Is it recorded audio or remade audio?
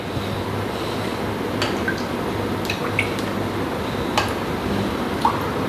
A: recorded